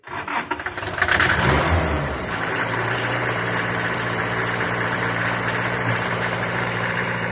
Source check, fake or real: fake